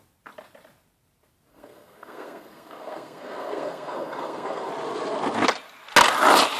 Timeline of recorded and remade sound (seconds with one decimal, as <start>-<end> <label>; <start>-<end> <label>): 0.0-1.5 recorded; 1.5-4.7 remade; 4.7-6.6 recorded